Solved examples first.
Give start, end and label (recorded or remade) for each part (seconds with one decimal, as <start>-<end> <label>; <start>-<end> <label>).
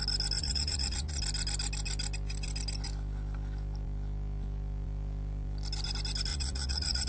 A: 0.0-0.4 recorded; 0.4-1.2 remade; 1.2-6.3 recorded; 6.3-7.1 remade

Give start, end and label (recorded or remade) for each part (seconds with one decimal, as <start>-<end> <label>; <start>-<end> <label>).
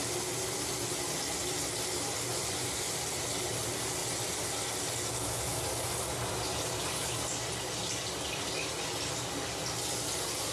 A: 0.0-2.3 recorded; 2.3-2.9 remade; 2.9-10.5 recorded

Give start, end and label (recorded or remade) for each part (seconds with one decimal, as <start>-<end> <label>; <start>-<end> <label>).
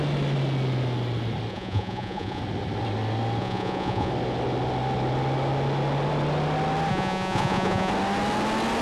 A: 0.0-1.5 recorded; 1.5-2.4 remade; 2.4-3.4 recorded; 3.4-4.1 remade; 4.1-6.9 recorded; 6.9-7.9 remade; 7.9-8.8 recorded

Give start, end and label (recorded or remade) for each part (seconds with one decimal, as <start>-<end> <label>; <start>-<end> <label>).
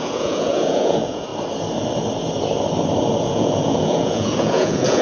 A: 0.0-1.3 remade; 1.3-3.2 recorded; 3.2-5.0 remade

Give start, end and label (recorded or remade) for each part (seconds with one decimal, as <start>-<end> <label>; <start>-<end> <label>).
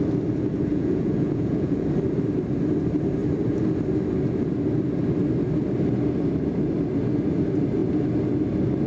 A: 0.0-0.7 recorded; 0.7-1.9 remade; 1.9-8.9 recorded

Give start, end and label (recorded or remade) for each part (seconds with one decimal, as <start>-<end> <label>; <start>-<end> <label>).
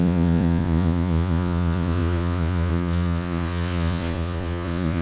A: 0.0-5.0 remade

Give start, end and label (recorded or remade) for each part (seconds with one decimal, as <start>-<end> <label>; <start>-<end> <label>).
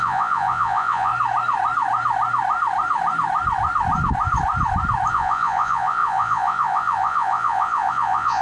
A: 0.0-1.1 remade; 1.1-5.1 recorded; 5.1-8.4 remade